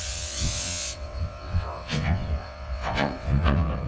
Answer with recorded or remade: remade